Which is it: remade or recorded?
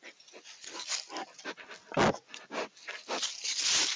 recorded